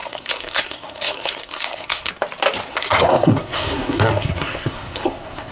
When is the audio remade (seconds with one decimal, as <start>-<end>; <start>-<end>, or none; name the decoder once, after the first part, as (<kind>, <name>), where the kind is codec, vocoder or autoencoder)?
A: 0.0-2.1 (codec, SNAC); 2.7-5.5